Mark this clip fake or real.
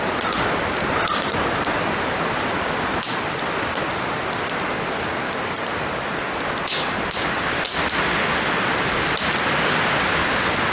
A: real